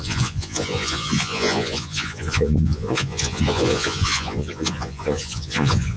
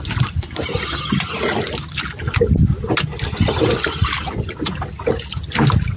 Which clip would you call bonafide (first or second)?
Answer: second